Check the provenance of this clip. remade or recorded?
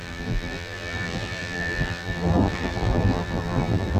remade